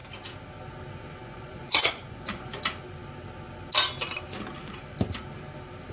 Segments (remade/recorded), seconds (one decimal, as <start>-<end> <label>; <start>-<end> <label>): 0.0-1.2 recorded; 1.2-2.5 remade; 2.5-5.9 recorded